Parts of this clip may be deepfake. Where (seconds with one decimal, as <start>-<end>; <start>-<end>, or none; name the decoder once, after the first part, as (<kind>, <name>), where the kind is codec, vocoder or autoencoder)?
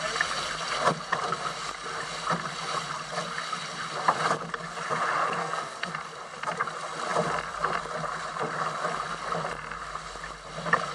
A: 5.4-5.9 (codec, SNAC)